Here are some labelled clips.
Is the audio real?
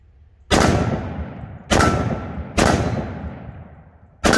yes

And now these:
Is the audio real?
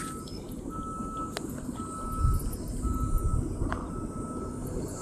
yes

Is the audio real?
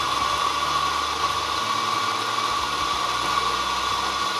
yes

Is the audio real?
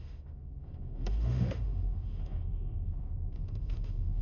no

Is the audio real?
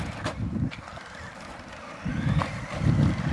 yes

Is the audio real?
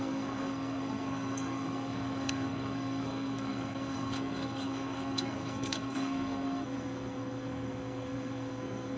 no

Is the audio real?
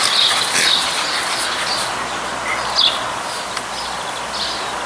yes